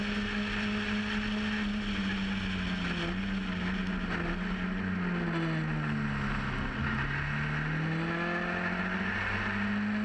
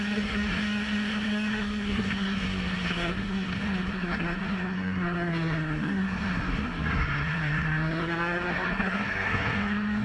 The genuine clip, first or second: first